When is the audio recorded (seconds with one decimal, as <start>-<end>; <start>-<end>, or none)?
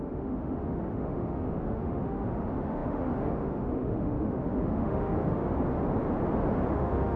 5.4-6.7